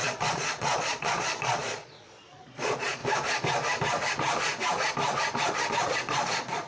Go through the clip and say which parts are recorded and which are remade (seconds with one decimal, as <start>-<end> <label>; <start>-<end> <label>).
0.0-3.0 remade; 3.0-5.7 recorded; 5.7-6.7 remade